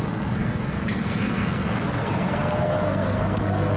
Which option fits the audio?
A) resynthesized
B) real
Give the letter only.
A